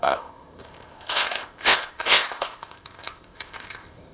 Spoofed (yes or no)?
yes